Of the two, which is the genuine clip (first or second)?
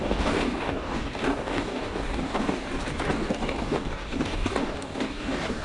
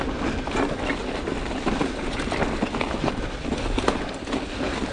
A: second